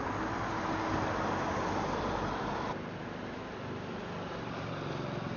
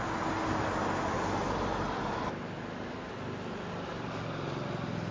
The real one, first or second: second